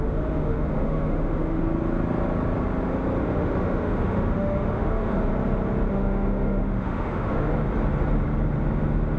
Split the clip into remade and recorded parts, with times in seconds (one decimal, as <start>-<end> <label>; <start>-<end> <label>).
0.0-1.6 remade; 1.6-3.2 recorded; 3.2-5.3 remade; 5.3-5.9 recorded; 5.9-7.5 remade; 7.5-9.2 recorded